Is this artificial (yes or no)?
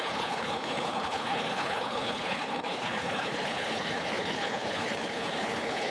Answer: yes